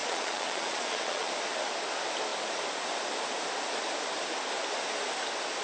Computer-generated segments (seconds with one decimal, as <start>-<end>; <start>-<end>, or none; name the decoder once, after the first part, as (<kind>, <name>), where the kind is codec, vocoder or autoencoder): 0.0-1.3 (vocoder, Vocos)